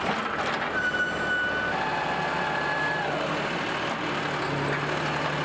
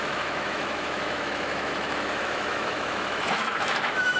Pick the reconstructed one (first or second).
second